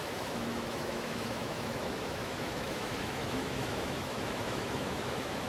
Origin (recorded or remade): remade